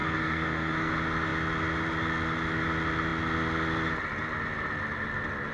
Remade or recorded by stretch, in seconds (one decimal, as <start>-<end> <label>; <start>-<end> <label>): 0.0-0.9 remade; 0.9-5.5 recorded